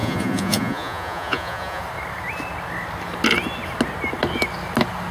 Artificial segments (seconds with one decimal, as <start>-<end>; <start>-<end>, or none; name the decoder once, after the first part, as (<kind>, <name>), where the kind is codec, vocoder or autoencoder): 0.0-1.8 (vocoder, Vocos)